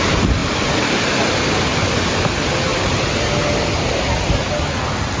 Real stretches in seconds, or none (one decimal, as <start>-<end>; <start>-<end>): 0.0-0.4; 1.6-5.2